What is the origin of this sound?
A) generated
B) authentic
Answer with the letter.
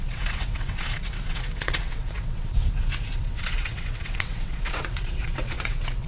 A